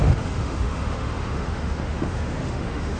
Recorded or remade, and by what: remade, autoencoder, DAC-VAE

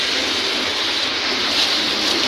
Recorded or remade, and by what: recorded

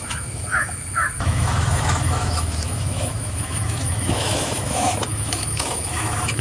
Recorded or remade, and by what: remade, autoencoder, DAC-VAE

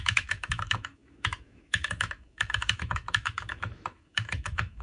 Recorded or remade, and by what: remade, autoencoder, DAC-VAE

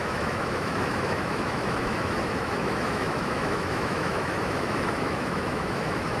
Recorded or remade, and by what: remade, autoencoder, DAC-VAE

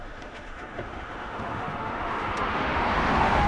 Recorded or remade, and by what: remade, autoencoder, DAC-VAE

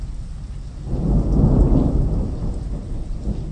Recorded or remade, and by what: recorded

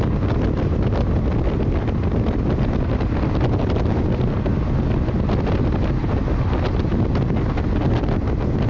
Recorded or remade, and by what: recorded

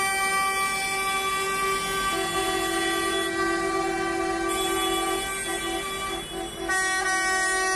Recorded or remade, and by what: recorded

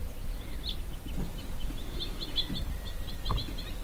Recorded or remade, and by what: recorded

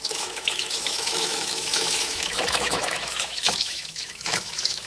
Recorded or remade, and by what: remade, autoencoder, DAC-VAE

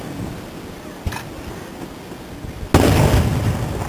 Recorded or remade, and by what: recorded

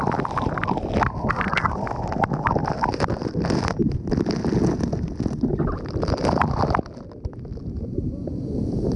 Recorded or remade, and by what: recorded